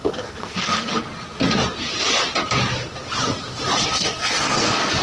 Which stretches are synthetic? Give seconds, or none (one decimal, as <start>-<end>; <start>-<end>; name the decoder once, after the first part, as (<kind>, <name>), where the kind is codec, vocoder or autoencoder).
0.0-0.9 (codec, SNAC); 3.9-5.0

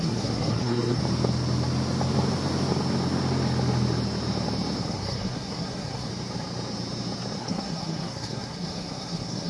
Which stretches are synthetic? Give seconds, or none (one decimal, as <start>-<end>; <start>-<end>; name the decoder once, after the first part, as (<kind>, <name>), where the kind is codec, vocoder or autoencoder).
0.0-1.0 (codec, SNAC); 4.8-6.1; 7.4-9.5

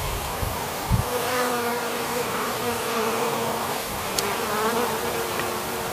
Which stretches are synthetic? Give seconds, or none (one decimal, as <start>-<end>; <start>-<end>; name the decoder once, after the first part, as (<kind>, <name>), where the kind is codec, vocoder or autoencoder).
0.0-4.1 (codec, DAC)

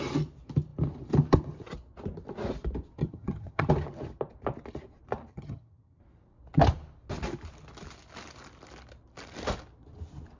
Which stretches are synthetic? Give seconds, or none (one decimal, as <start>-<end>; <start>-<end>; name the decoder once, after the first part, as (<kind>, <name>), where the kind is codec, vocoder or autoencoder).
3.0-3.7 (vocoder, HiFi-GAN); 5.3-6.0

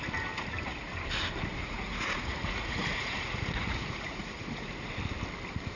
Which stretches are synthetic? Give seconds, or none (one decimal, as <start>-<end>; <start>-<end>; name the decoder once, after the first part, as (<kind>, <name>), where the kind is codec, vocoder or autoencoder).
1.6-4.9 (vocoder, Vocos)